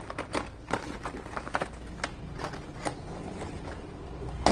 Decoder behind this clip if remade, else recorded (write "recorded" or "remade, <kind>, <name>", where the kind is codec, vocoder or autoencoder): recorded